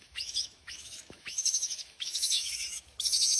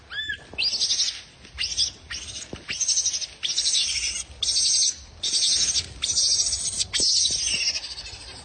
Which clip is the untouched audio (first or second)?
second